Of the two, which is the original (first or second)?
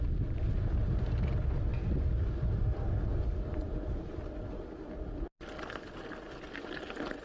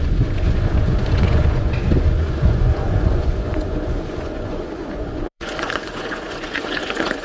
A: first